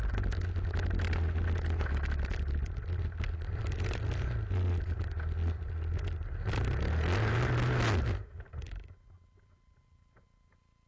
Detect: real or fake real